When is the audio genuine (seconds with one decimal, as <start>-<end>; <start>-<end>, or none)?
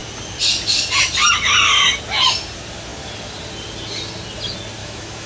0.0-4.8